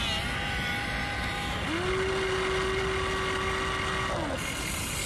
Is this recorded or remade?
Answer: recorded